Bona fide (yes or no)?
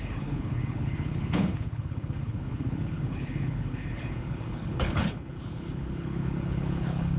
no